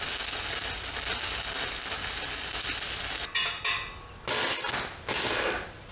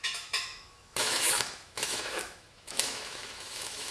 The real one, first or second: first